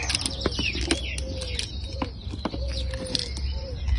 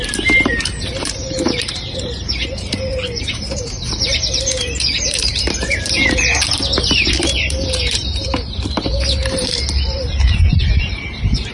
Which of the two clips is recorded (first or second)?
first